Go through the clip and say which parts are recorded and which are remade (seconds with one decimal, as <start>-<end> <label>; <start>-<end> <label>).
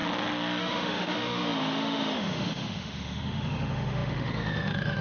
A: 0.0-0.6 recorded; 0.6-5.0 remade